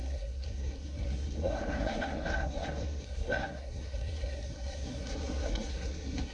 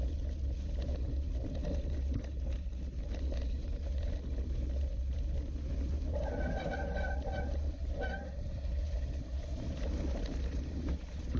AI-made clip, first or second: first